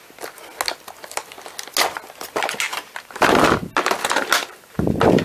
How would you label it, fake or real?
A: real